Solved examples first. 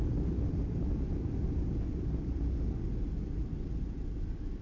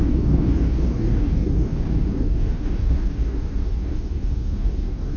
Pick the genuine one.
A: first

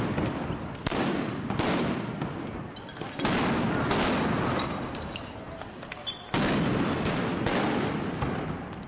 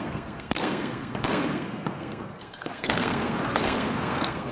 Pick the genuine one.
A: first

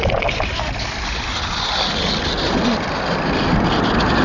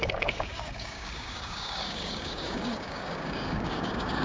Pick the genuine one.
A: first